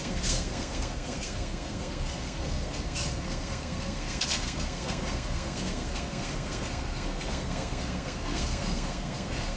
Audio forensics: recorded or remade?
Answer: remade